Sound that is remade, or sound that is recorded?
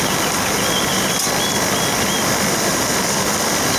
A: recorded